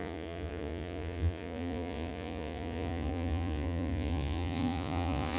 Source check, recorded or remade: remade